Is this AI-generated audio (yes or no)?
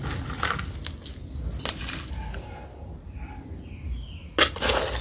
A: no